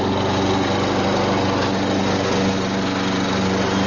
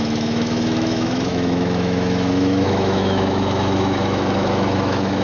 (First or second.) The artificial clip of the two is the second